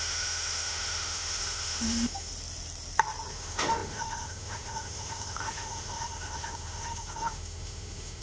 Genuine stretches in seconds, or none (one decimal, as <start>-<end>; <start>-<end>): 2.3-3.3